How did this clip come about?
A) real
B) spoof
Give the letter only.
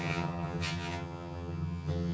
B